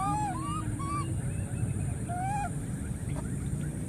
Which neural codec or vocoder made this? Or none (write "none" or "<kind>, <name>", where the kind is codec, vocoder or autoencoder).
none